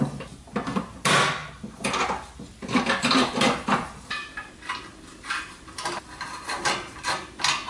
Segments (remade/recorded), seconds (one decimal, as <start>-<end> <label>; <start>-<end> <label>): 0.0-1.4 recorded; 1.4-2.8 remade; 2.8-4.2 recorded; 4.2-6.7 remade; 6.7-7.7 recorded